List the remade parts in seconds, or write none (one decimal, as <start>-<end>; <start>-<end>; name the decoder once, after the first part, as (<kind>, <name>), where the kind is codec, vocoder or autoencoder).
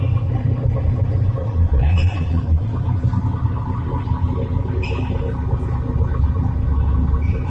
1.4-2.7 (vocoder, Vocos)